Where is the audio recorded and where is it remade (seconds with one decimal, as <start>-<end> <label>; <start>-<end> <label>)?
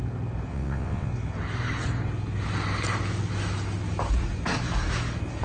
0.0-0.5 recorded; 0.5-1.1 remade; 1.1-5.4 recorded